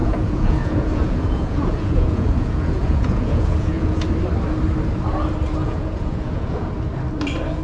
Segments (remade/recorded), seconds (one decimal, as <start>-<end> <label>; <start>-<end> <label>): 0.0-4.0 remade; 4.0-5.6 recorded; 5.6-6.7 remade; 6.7-7.6 recorded